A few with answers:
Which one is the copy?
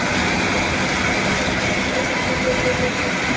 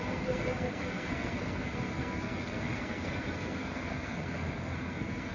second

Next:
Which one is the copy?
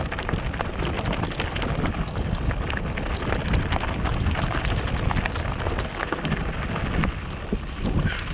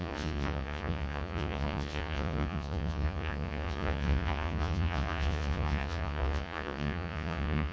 second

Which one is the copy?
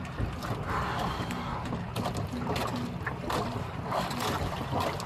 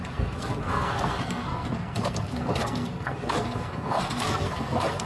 second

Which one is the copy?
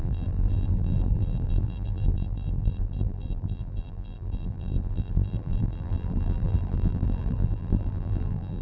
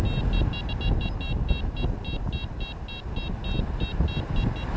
first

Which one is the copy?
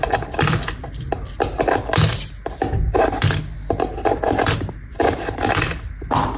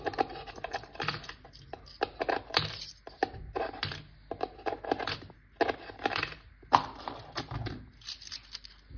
first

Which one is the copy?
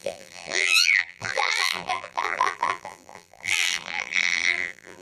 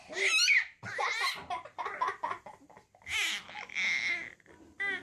first